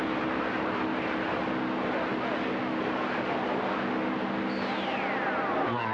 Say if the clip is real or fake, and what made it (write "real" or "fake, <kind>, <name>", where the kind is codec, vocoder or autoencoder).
real